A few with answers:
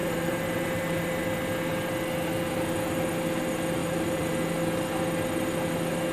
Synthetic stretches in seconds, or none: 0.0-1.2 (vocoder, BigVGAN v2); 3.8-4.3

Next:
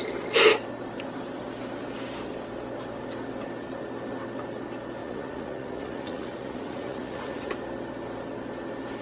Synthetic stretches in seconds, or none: 5.0-7.5 (vocoder, Vocos)

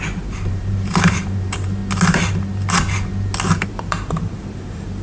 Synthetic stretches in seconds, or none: 0.0-1.8 (vocoder, BigVGAN v2); 3.7-5.0